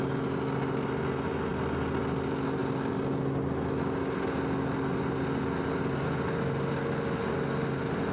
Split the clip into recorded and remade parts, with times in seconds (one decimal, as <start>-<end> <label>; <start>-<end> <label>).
0.0-8.1 recorded